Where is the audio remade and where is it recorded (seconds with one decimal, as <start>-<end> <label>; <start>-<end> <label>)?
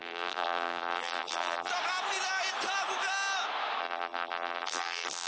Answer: 0.0-1.7 remade; 1.7-3.8 recorded; 3.8-5.3 remade